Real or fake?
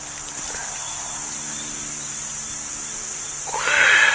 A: real